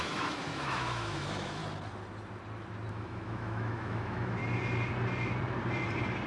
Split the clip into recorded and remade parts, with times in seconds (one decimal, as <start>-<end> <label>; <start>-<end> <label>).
0.0-1.6 remade; 1.6-2.9 recorded; 2.9-4.4 remade; 4.4-6.3 recorded